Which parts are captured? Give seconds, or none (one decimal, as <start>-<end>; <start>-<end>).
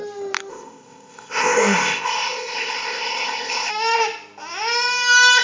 0.0-0.5; 3.7-5.4